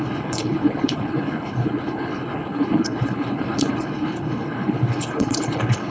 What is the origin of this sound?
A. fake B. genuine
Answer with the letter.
A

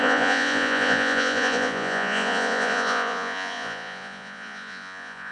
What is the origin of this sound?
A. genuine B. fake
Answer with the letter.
B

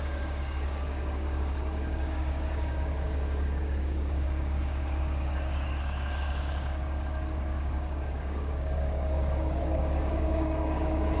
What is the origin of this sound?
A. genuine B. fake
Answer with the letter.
B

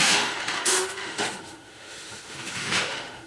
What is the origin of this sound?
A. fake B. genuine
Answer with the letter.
A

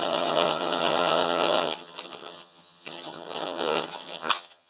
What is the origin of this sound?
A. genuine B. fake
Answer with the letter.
B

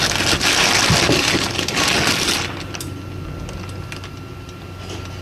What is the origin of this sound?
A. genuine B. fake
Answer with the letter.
A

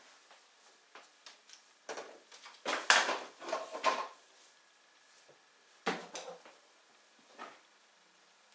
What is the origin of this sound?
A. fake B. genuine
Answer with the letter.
B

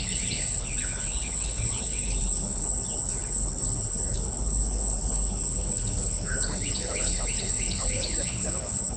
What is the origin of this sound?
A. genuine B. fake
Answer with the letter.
B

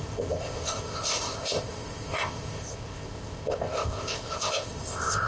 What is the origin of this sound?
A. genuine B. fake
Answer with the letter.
B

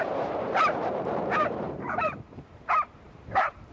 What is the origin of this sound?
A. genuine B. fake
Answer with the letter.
B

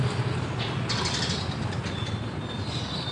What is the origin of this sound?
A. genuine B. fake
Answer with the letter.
A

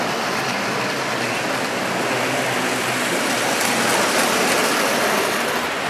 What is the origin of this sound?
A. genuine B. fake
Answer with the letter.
A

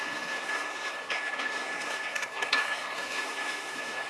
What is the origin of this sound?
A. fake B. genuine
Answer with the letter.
A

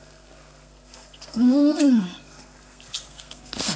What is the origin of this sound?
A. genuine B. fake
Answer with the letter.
B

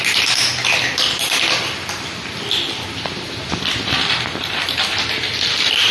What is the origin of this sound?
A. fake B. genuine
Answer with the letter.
B